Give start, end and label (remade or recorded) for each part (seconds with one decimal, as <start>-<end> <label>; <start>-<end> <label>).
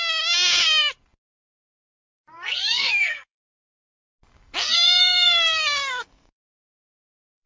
0.0-2.3 recorded; 2.3-3.5 remade; 3.5-4.6 recorded; 4.6-6.8 remade; 6.8-7.5 recorded